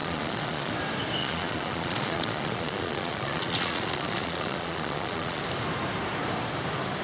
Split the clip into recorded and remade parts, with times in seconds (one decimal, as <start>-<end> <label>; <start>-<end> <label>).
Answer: 0.0-0.7 remade; 0.7-1.2 recorded; 1.2-5.4 remade; 5.4-7.0 recorded